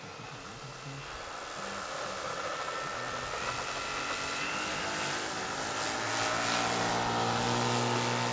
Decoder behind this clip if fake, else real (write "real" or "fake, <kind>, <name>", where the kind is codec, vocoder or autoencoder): real